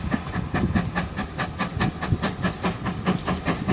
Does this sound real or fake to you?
real